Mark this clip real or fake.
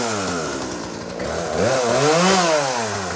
real